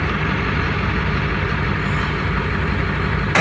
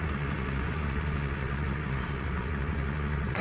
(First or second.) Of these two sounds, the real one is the first